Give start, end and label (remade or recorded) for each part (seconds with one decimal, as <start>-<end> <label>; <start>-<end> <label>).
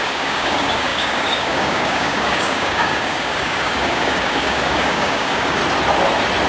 0.0-5.6 remade; 5.6-6.5 recorded